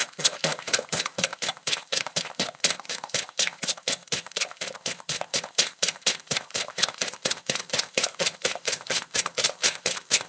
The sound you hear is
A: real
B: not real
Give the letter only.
B